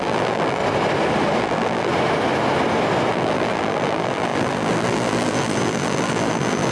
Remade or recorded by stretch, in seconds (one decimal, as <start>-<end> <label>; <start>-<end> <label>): 0.0-0.6 remade; 0.6-1.4 recorded; 1.4-1.9 remade; 1.9-3.1 recorded; 3.1-6.7 remade